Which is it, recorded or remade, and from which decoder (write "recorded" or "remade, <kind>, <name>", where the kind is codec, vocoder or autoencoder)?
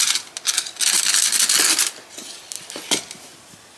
recorded